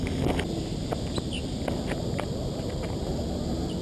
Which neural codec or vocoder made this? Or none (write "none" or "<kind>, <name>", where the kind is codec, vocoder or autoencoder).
none